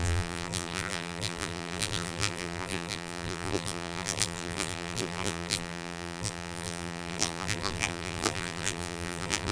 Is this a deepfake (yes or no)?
yes